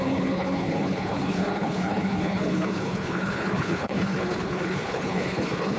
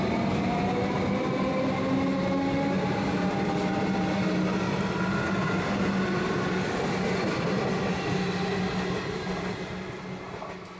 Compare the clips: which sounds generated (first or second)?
first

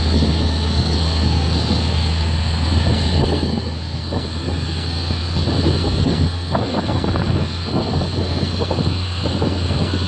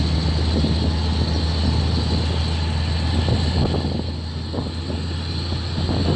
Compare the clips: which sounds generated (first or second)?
first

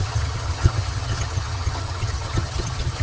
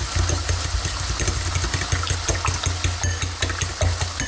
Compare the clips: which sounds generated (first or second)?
first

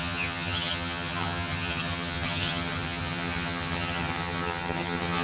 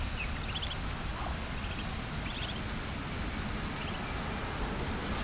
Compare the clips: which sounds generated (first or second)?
first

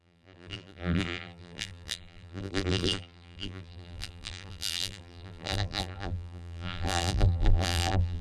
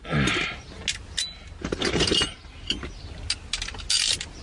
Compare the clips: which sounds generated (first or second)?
first